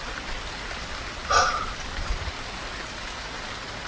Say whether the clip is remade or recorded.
recorded